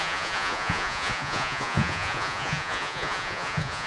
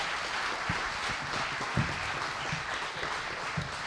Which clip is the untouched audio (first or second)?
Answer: second